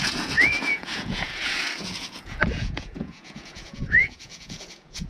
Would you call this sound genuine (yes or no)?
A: no